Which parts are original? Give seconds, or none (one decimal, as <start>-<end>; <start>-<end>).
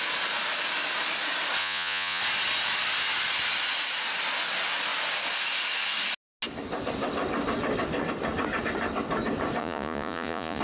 0.0-1.6; 2.2-9.6